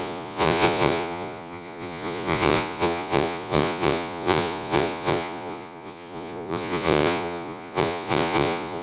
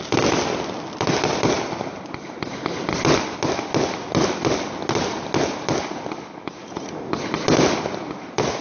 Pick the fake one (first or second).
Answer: first